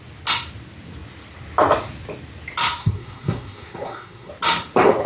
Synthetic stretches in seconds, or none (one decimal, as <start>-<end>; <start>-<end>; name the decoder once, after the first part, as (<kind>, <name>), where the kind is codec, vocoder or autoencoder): 2.8-4.3 (codec, SNAC)